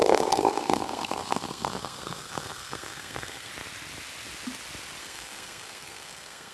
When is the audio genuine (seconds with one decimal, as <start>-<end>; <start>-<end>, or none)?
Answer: 3.5-5.0